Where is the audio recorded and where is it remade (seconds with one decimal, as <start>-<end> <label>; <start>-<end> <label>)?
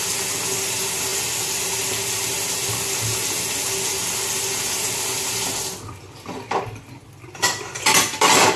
0.0-8.6 recorded